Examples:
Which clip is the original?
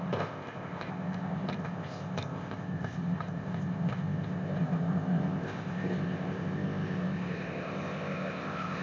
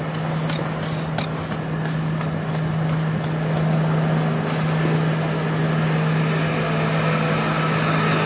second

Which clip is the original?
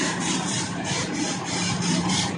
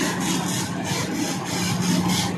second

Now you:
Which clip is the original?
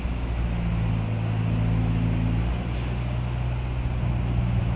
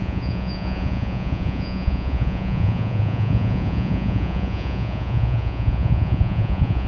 first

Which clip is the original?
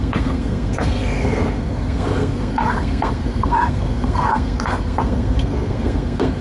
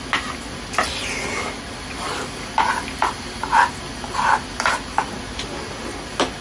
second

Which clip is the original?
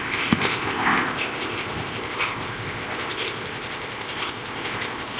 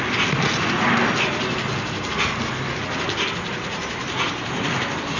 second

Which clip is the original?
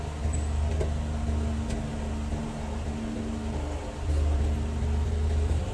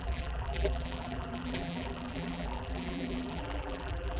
first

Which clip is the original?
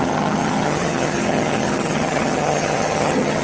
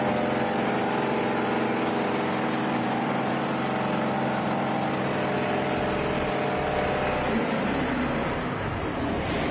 second